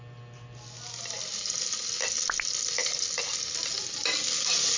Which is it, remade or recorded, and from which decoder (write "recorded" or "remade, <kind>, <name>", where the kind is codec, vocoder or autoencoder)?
recorded